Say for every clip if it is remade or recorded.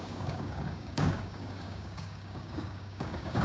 remade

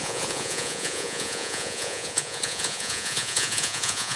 remade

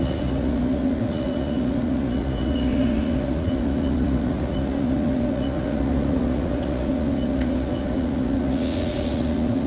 remade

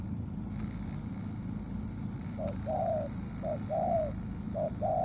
recorded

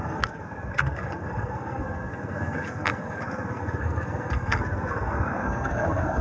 remade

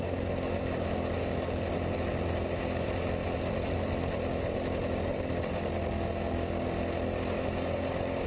recorded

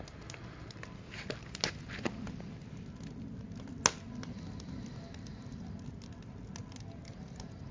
recorded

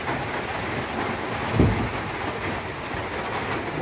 recorded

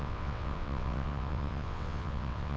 remade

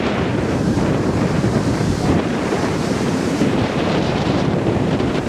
remade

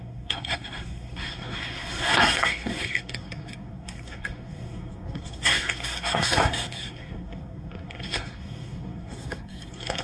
remade